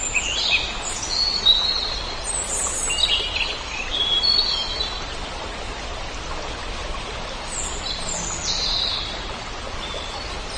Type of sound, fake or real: real